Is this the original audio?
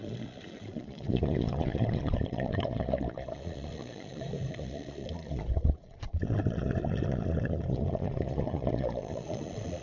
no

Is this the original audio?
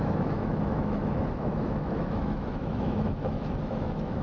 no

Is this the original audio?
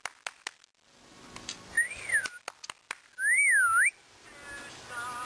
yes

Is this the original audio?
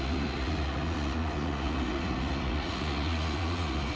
no